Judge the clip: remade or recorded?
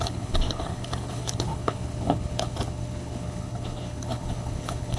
remade